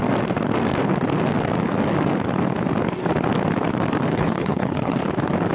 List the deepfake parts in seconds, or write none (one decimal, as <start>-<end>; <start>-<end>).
4.1-5.0